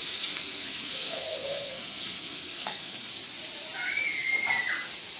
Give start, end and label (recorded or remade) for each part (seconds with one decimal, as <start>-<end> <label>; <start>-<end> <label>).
0.0-3.1 remade; 3.1-5.2 recorded